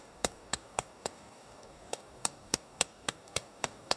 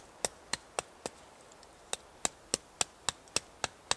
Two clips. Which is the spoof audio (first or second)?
first